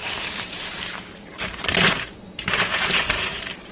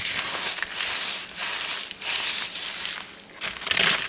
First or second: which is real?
second